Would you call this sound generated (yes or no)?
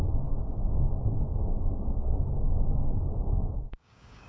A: yes